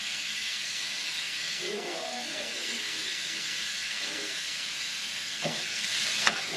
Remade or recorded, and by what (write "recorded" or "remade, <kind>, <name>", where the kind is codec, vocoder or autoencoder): remade, codec, SNAC